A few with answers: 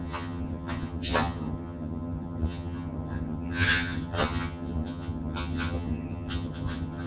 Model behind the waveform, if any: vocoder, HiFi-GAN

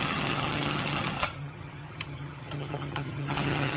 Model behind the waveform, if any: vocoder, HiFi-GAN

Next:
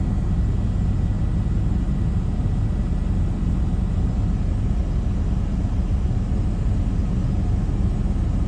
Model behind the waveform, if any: none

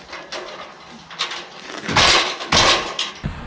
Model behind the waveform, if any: none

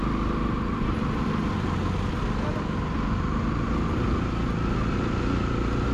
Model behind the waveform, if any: none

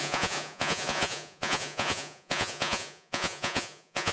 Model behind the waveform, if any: vocoder, Vocos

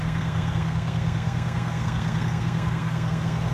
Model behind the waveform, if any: codec, SNAC